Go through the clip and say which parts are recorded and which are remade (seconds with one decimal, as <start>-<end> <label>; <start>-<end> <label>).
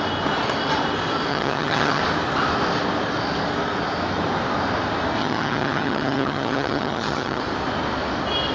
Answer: 0.0-1.3 recorded; 1.3-2.0 remade; 2.0-5.2 recorded; 5.2-7.4 remade; 7.4-8.5 recorded